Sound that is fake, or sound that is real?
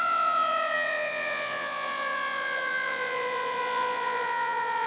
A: fake